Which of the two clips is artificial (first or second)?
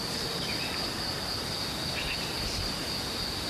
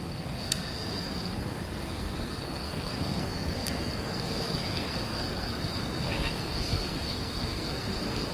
second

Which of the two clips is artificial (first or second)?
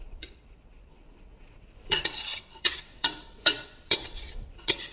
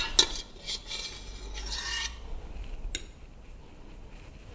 first